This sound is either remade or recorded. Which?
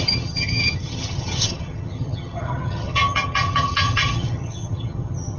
remade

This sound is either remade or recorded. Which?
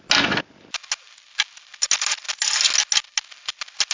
recorded